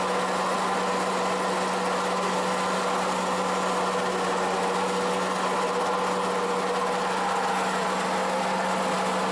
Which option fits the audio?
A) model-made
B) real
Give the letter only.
B